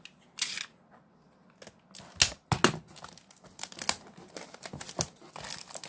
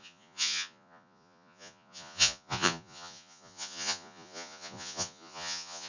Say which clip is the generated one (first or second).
second